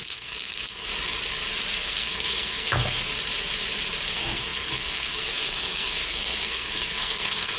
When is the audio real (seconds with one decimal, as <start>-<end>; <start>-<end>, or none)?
0.9-1.7; 3.1-4.1